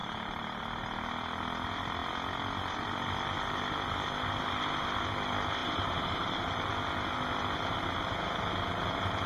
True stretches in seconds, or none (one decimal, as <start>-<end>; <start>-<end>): 0.6-5.6; 6.7-9.3